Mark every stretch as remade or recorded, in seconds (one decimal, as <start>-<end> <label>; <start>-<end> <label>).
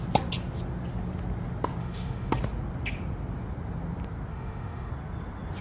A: 0.0-1.8 recorded; 1.8-2.3 remade; 2.3-4.3 recorded; 4.3-4.9 remade; 4.9-5.6 recorded